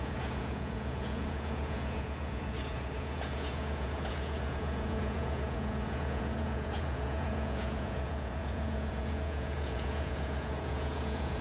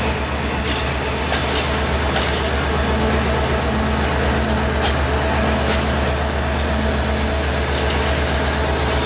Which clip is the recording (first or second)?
second